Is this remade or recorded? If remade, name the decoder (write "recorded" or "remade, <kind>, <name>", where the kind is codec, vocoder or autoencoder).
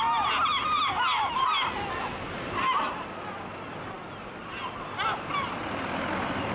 recorded